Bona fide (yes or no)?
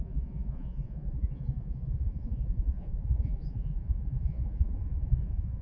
no